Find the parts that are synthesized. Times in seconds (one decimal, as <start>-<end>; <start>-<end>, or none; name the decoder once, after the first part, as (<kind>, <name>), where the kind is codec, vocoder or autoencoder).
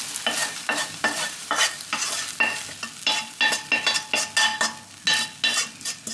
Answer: 0.4-1.5 (vocoder, BigVGAN v2)